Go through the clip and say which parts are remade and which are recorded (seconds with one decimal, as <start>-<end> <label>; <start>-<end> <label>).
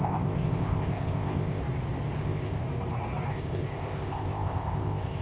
0.0-1.6 remade; 1.6-2.2 recorded; 2.2-2.6 remade; 2.6-3.3 recorded; 3.3-5.2 remade